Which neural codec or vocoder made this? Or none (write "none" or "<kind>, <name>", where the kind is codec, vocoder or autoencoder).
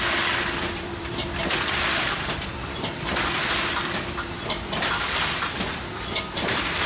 vocoder, BigVGAN v2